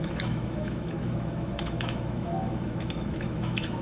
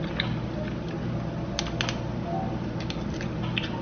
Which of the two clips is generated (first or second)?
first